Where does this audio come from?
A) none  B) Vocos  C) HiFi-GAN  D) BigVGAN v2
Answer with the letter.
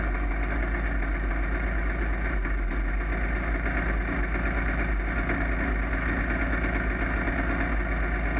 A